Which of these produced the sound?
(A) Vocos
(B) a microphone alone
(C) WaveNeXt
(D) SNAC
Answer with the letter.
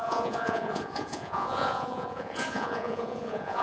A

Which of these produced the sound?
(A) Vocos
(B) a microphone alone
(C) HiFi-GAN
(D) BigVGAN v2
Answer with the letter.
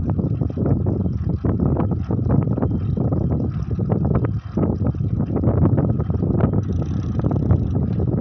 B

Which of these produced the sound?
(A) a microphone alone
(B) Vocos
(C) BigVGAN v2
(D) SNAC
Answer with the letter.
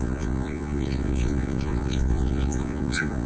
B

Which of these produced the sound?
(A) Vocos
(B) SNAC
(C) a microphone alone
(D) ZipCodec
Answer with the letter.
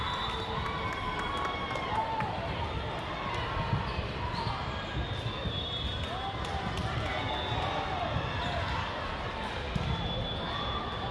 C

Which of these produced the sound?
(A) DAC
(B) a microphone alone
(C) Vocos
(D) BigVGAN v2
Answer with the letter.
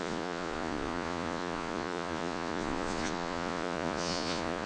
C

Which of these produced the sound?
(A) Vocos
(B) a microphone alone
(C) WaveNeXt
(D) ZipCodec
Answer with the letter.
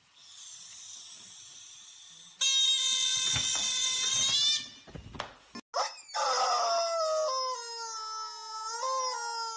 B